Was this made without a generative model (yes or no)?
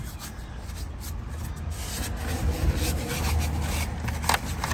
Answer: yes